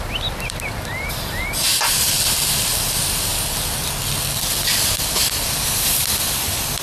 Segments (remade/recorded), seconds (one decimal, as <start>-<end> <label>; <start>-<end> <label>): 0.0-1.7 remade; 1.7-2.5 recorded; 2.5-3.3 remade; 3.3-4.8 recorded; 4.8-6.8 remade